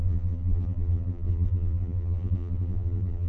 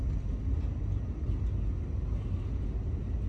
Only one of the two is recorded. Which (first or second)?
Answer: second